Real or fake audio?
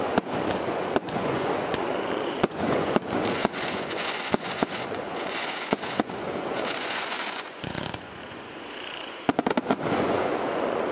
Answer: fake